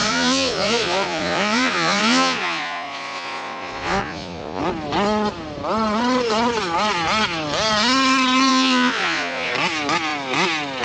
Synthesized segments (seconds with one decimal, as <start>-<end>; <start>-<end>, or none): 0.0-4.6; 8.5-9.5